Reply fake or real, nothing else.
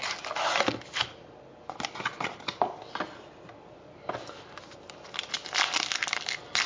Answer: real